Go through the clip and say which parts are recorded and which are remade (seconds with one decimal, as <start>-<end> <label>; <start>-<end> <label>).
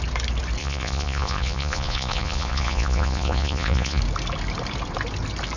0.0-0.6 recorded; 0.6-4.0 remade; 4.0-5.6 recorded